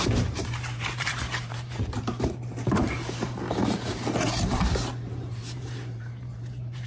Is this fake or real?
fake